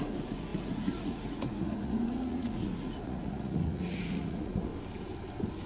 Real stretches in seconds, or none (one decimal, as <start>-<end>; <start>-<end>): 4.7-5.7